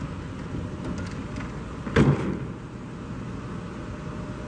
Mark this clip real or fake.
real